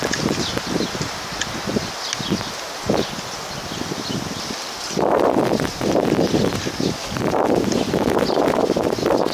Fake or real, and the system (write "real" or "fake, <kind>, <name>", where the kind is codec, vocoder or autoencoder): real